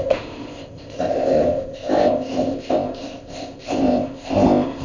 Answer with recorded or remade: remade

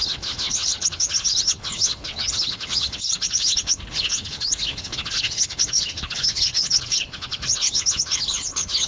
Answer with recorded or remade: remade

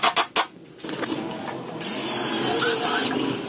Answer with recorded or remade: recorded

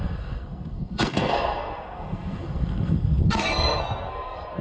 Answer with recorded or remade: remade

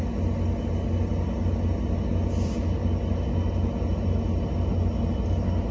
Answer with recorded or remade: recorded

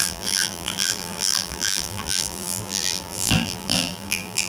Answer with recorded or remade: remade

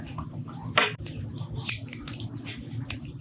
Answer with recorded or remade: recorded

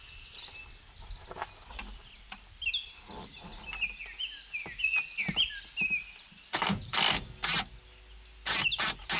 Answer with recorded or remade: recorded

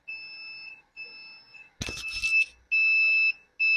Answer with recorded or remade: recorded